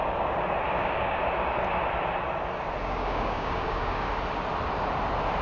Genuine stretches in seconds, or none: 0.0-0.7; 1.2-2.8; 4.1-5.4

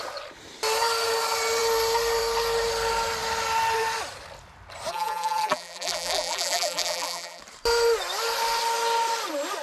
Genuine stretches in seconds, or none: 0.0-4.9; 7.4-9.6

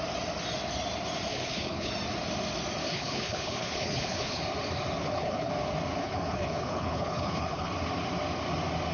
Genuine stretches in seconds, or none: 0.0-1.3; 1.9-2.8; 4.4-5.0; 5.5-6.0; 7.7-8.9

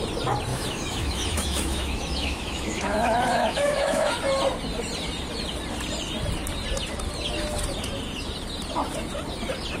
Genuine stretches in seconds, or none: 0.0-0.5; 4.1-9.8